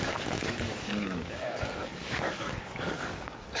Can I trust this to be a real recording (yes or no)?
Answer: no